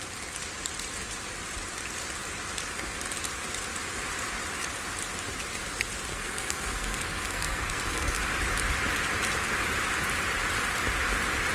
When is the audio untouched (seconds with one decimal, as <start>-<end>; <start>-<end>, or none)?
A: 0.0-6.1; 8.2-11.5